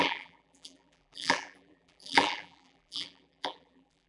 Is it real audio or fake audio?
fake